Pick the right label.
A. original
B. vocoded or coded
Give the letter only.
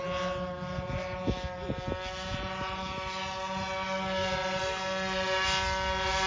A